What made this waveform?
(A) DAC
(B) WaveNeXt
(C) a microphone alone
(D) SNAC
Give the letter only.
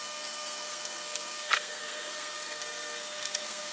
D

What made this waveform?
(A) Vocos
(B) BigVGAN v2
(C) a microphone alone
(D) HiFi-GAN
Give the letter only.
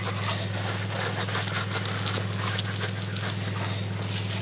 C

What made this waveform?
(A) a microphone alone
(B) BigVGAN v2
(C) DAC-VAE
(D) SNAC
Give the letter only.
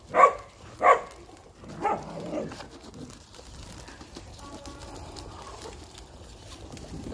A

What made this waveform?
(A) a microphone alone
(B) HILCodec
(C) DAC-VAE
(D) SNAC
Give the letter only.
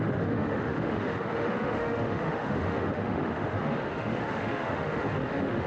C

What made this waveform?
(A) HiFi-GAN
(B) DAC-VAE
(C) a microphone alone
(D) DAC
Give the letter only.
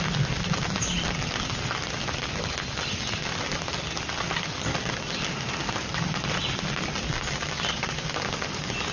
C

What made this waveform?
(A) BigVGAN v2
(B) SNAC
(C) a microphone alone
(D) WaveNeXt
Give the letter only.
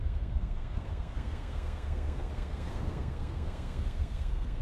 B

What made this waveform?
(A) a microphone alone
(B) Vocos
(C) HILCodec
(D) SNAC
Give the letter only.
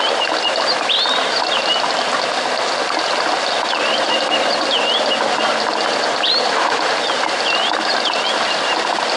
A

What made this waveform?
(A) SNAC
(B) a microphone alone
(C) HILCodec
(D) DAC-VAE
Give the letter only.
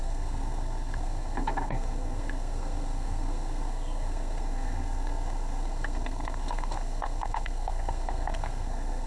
A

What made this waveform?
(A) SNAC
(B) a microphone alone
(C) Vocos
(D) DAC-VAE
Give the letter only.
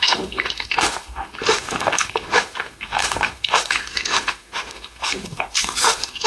D